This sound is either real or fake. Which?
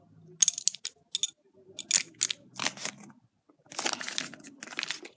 real